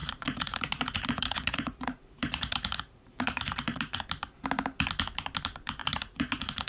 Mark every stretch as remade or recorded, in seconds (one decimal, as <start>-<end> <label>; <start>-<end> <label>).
0.0-4.0 remade; 4.0-5.8 recorded; 5.8-6.7 remade